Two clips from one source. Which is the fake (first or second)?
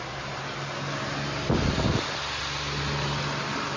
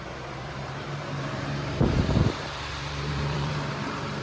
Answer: second